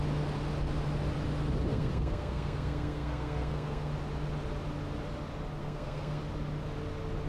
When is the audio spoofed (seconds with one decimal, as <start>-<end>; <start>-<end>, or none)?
1.7-3.9; 5.6-6.2